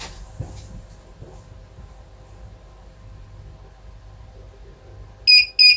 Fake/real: real